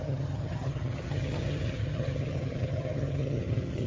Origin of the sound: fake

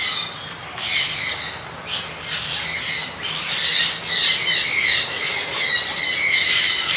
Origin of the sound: real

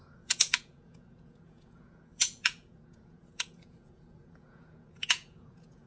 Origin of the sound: fake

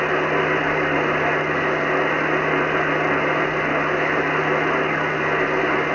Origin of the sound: real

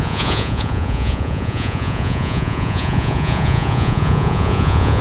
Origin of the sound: fake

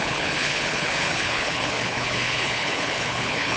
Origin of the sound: fake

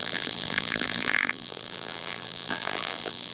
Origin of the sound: fake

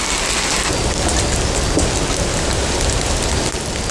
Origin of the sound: real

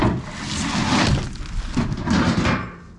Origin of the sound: real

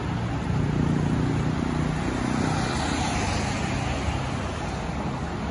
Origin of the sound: real